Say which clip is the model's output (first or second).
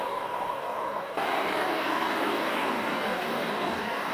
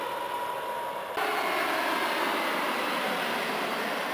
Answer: first